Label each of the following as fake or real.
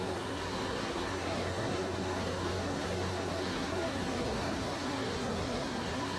fake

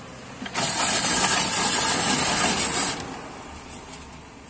real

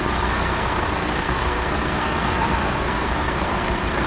fake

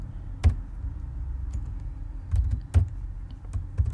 real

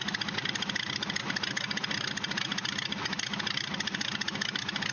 real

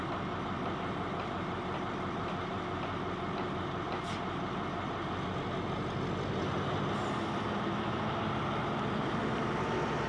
real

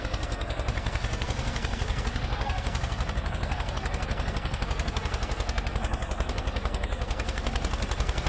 fake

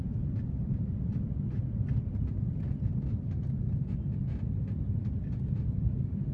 real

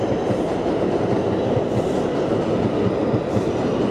real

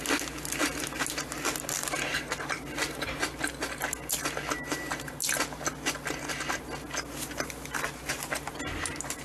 real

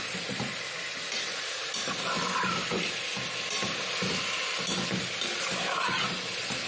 real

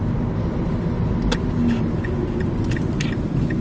real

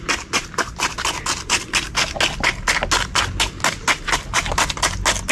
real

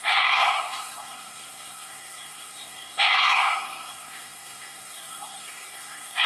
fake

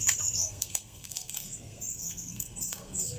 fake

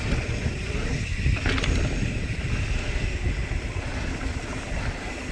real